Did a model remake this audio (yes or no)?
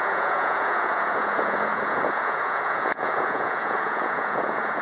yes